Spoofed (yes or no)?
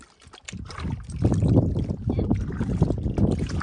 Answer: no